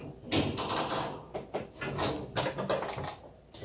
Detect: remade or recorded recorded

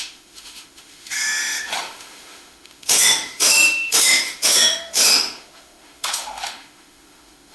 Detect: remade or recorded remade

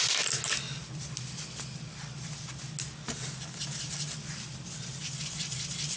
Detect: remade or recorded recorded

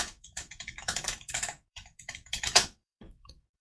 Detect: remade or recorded remade